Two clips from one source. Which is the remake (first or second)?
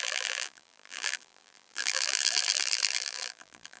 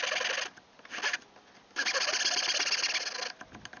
first